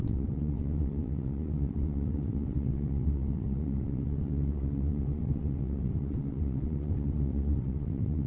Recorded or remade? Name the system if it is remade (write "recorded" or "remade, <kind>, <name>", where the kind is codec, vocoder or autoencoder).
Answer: remade, vocoder, WaveNeXt